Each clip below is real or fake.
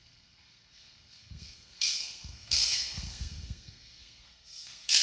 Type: fake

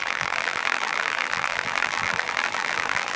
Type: fake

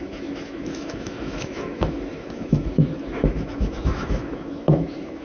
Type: fake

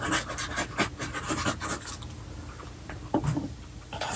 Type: real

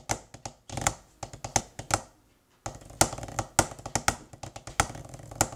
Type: real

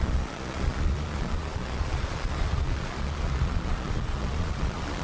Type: fake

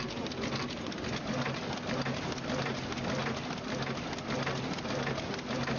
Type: real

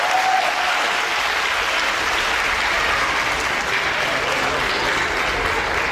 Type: real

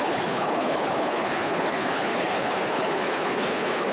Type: fake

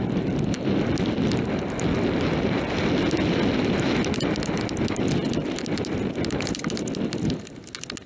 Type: real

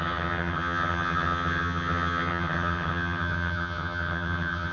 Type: fake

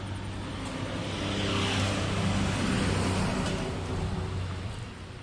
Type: real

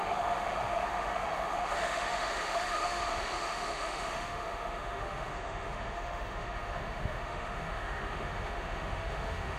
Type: fake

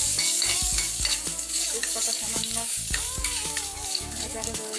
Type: fake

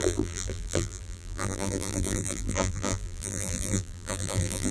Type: fake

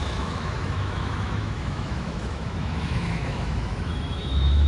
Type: fake